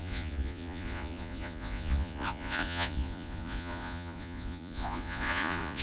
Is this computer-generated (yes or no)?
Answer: yes